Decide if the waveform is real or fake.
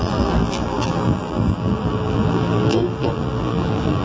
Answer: fake